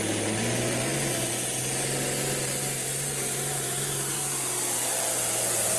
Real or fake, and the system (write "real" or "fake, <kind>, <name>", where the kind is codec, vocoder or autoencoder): real